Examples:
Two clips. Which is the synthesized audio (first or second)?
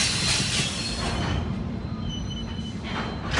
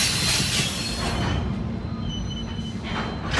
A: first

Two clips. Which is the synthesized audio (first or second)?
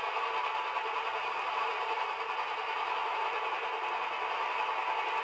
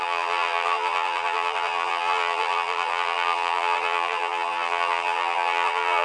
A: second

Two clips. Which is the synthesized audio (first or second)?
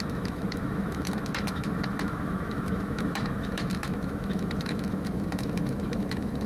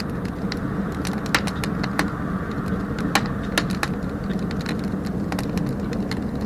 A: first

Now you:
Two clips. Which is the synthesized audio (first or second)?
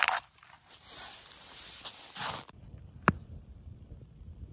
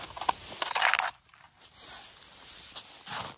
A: first